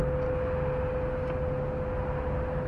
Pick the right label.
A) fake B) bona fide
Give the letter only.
B